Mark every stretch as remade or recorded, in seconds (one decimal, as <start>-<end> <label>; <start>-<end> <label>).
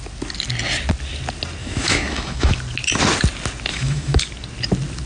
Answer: 0.0-1.6 recorded; 1.6-2.5 remade; 2.5-3.7 recorded; 3.7-4.2 remade; 4.2-5.1 recorded